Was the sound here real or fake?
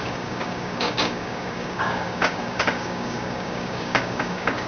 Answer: fake